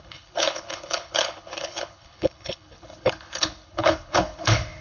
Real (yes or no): no